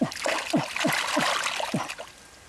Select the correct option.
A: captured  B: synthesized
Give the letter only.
A